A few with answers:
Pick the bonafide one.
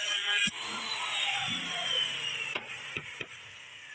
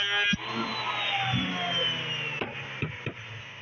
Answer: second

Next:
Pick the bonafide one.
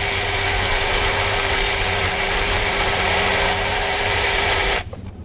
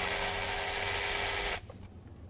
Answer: second